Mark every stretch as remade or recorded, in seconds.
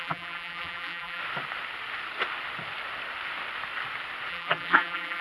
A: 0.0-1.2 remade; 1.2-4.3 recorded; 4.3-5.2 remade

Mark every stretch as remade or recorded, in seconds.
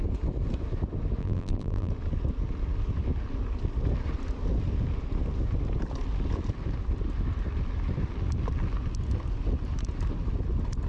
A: 0.0-1.2 recorded; 1.2-1.9 remade; 1.9-10.9 recorded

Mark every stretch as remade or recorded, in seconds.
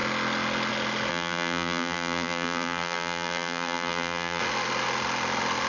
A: 0.0-1.1 recorded; 1.1-4.4 remade; 4.4-5.7 recorded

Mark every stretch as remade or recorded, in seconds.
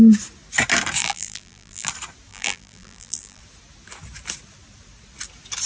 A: 0.0-1.0 recorded; 1.0-1.9 remade; 1.9-2.3 recorded; 2.3-3.4 remade; 3.4-5.7 recorded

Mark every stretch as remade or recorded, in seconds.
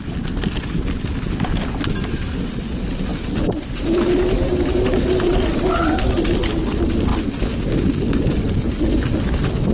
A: 0.0-3.1 recorded; 3.1-5.4 remade; 5.4-9.7 recorded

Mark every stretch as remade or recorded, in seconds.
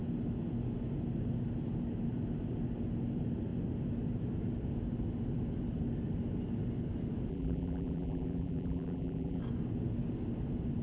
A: 0.0-7.3 recorded; 7.3-9.4 remade; 9.4-10.8 recorded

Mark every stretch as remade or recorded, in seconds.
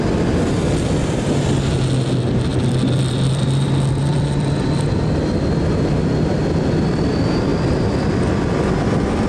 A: 0.0-2.5 recorded; 2.5-5.6 remade; 5.6-7.5 recorded; 7.5-8.1 remade; 8.1-9.3 recorded